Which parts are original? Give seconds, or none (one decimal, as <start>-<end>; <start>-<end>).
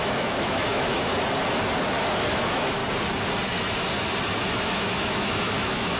1.1-2.3; 2.8-4.5